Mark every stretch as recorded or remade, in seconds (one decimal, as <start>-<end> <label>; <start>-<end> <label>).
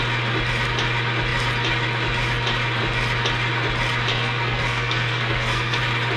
0.0-4.1 recorded; 4.1-5.8 remade; 5.8-6.2 recorded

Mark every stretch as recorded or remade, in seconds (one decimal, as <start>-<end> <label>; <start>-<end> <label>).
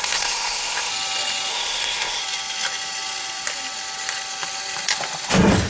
0.0-0.9 remade; 0.9-1.5 recorded; 1.5-2.2 remade; 2.2-5.7 recorded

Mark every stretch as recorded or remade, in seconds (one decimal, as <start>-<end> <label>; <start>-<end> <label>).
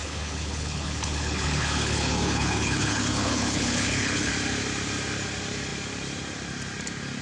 0.0-4.3 remade; 4.3-7.2 recorded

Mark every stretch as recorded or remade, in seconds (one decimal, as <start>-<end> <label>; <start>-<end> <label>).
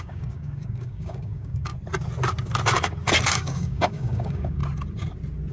0.0-1.7 remade; 1.7-3.3 recorded; 3.3-4.6 remade; 4.6-5.5 recorded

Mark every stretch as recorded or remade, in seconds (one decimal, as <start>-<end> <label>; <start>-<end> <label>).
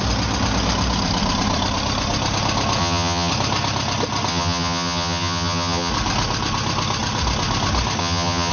0.0-2.8 recorded; 2.8-3.3 remade; 3.3-4.3 recorded; 4.3-5.9 remade; 5.9-8.0 recorded; 8.0-8.5 remade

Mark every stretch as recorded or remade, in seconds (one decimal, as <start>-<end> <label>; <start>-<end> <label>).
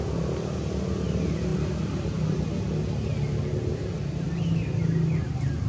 0.0-5.7 recorded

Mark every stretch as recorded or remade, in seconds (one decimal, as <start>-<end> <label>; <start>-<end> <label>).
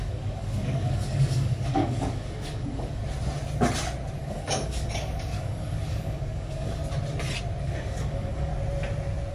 0.0-3.0 remade; 3.0-4.2 recorded; 4.2-6.8 remade; 6.8-7.6 recorded; 7.6-8.5 remade; 8.5-9.3 recorded